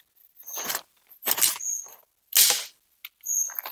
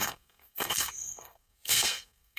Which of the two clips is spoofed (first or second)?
second